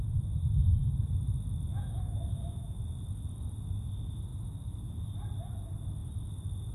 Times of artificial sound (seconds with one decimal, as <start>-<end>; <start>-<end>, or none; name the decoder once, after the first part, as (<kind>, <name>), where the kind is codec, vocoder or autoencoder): 1.7-2.8 (autoencoder, DAC-VAE)